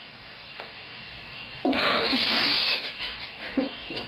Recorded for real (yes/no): no